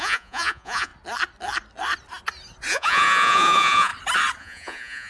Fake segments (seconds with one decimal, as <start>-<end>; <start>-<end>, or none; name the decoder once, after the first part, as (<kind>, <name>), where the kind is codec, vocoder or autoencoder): 0.0-0.9 (vocoder, Vocos); 2.7-3.9; 4.4-5.1